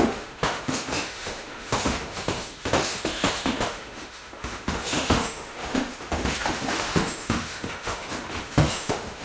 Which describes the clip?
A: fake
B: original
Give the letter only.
A